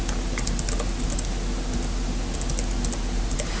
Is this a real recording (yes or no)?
yes